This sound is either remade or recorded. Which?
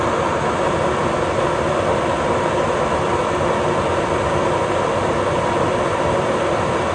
recorded